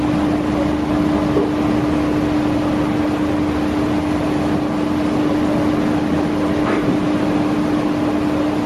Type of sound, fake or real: real